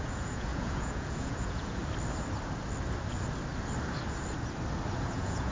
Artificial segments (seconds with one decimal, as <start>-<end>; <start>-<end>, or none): 0.0-1.8; 5.1-5.5